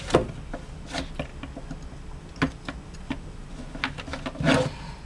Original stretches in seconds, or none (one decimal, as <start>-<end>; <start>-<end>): 0.0-5.1